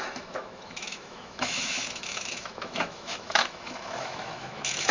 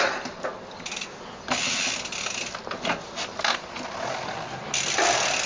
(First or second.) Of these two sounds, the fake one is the first